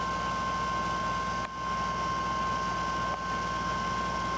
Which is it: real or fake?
real